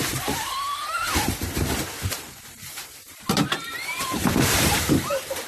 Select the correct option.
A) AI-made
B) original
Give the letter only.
A